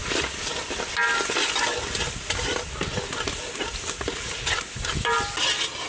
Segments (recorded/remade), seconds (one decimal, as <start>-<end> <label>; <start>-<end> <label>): 0.0-5.9 recorded